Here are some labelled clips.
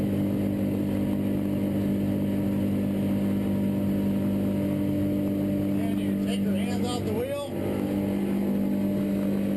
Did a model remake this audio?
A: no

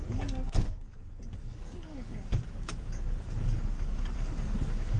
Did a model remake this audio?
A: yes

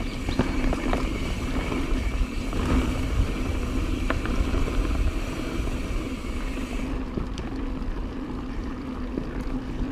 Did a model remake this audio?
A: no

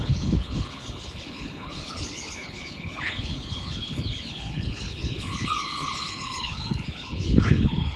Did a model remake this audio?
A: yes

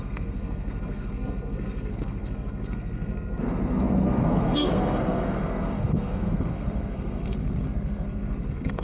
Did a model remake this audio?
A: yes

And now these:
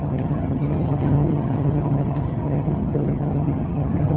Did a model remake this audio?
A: yes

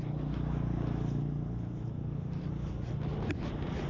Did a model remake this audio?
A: no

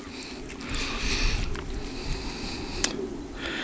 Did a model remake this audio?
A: no